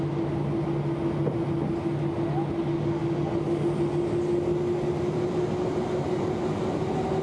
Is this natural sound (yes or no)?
yes